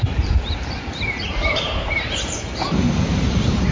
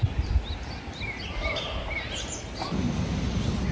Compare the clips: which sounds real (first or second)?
second